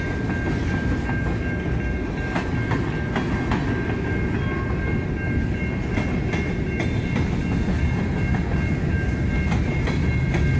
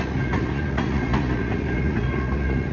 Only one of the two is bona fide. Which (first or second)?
first